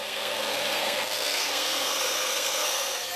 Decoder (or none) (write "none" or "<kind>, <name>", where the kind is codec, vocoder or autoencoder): codec, SNAC